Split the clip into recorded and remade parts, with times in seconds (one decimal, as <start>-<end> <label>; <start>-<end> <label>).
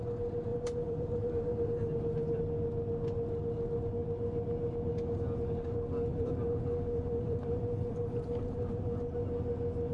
0.0-0.5 recorded; 0.5-2.4 remade; 2.4-6.1 recorded; 6.1-9.5 remade; 9.5-9.9 recorded